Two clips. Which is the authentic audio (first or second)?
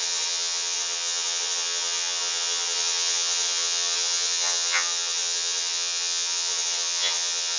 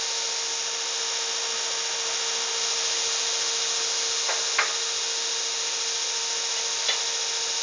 second